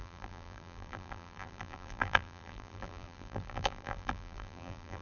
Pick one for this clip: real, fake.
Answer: fake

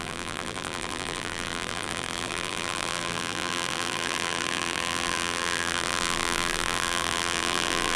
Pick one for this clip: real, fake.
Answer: fake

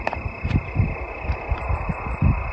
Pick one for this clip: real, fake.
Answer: fake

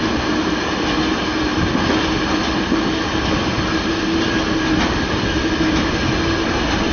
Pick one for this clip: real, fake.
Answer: real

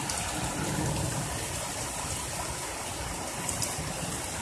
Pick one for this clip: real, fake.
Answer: real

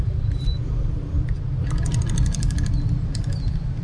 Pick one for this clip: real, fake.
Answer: fake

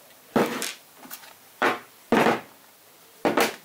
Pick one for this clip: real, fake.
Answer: fake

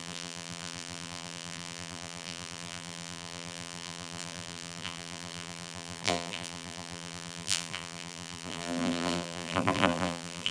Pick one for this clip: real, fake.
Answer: fake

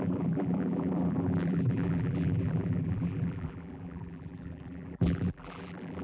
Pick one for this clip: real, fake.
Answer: fake